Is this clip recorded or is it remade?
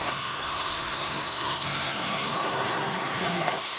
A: remade